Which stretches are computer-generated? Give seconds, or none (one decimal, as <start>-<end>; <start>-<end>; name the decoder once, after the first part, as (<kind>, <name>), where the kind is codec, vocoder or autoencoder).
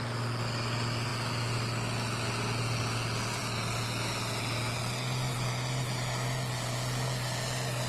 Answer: none